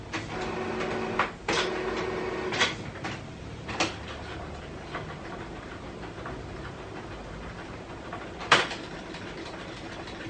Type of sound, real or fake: fake